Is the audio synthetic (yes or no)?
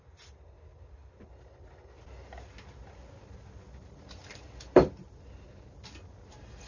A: no